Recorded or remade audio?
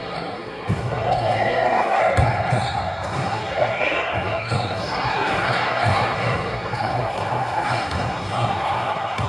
remade